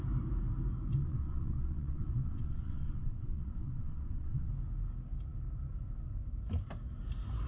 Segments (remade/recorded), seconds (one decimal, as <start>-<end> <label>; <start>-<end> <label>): 0.0-1.0 recorded; 1.0-4.5 remade; 4.5-7.5 recorded